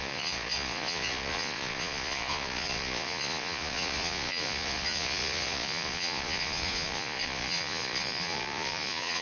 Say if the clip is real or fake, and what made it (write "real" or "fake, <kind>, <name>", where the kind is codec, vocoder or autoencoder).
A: fake, vocoder, Vocos